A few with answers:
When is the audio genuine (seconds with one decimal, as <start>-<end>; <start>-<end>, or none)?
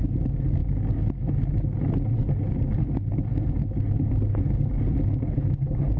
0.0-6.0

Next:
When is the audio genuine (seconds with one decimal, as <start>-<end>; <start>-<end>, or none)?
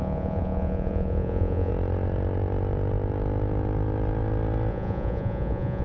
1.7-4.7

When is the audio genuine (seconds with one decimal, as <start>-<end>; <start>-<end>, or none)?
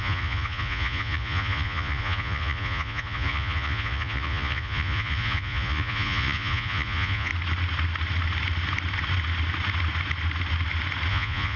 7.3-11.1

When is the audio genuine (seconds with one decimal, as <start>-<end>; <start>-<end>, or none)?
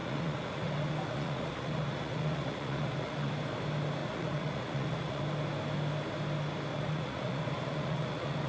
3.3-4.0; 5.2-6.7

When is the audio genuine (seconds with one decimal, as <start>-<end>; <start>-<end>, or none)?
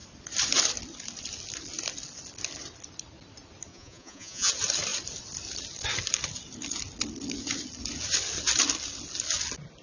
0.0-3.7; 4.5-9.8